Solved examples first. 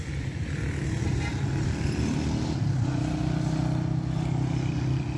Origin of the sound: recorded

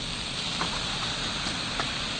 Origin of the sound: recorded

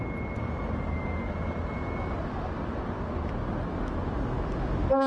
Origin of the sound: recorded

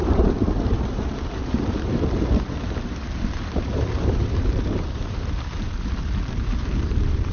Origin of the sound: remade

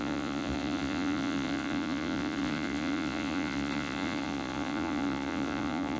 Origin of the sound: remade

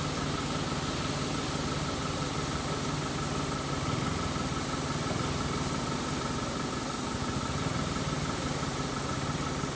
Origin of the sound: recorded